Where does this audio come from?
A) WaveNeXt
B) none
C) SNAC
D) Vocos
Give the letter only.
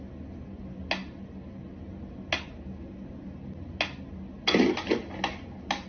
B